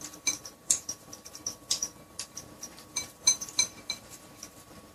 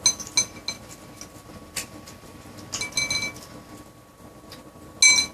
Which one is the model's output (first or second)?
first